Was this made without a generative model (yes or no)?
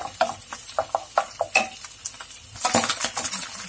yes